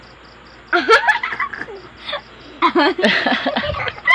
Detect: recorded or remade recorded